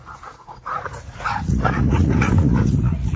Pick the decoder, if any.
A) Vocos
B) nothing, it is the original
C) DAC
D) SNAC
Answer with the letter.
A